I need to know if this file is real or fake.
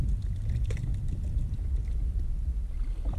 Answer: real